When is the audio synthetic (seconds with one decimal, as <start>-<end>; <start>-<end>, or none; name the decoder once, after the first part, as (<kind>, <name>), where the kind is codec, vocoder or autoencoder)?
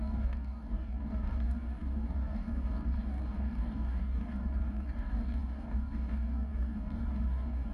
0.0-7.7 (codec, DAC)